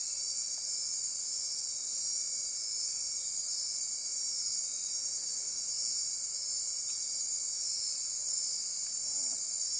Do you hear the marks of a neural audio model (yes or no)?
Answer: no